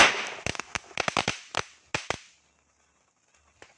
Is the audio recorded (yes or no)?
yes